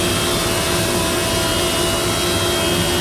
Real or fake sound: real